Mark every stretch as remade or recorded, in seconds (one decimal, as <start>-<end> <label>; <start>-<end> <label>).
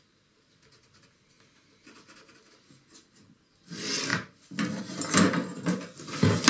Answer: 0.0-6.5 recorded